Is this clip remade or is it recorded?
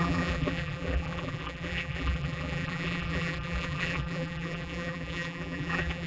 remade